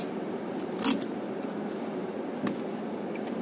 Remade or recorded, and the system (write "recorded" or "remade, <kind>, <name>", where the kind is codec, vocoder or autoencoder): recorded